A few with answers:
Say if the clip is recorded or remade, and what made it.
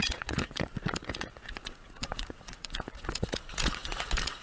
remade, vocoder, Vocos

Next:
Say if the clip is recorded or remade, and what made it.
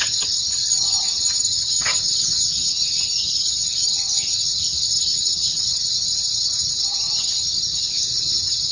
remade, vocoder, HiFi-GAN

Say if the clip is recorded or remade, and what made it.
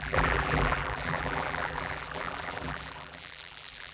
remade, vocoder, BigVGAN v2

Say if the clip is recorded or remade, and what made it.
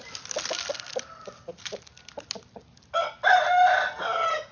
recorded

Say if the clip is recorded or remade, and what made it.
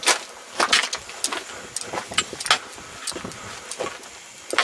recorded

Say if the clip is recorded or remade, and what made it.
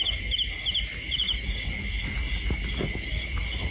recorded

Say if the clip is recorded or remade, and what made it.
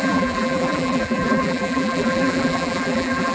remade, vocoder, BigVGAN v2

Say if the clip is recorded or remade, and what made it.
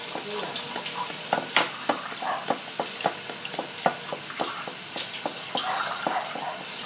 recorded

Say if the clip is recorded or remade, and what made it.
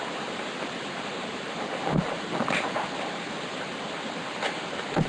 remade, vocoder, BigVGAN v2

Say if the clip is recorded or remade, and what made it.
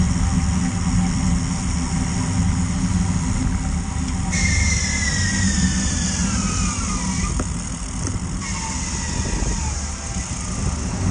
recorded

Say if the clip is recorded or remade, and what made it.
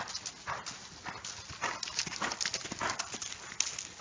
recorded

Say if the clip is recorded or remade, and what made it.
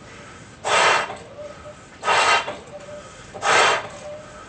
recorded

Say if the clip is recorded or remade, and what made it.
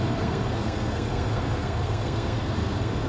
remade, codec, SNAC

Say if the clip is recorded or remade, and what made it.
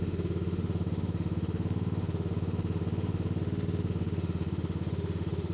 remade, autoencoder, DAC-VAE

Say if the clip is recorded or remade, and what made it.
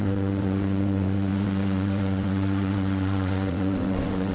remade, vocoder, WaveNeXt